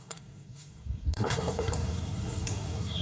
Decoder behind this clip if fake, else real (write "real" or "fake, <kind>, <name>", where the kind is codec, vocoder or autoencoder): fake, codec, SNAC